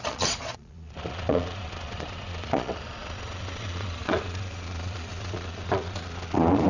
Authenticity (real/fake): fake